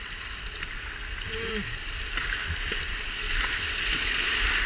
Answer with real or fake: real